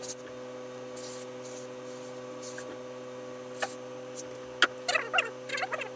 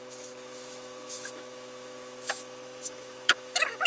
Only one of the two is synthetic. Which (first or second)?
second